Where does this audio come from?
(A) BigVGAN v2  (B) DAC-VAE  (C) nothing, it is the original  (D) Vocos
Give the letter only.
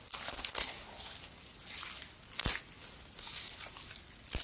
C